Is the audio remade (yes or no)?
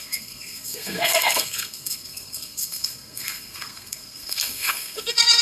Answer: yes